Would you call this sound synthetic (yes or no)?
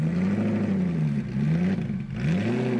no